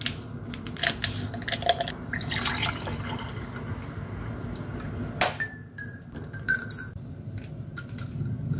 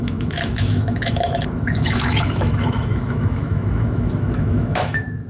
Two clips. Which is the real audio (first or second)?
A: first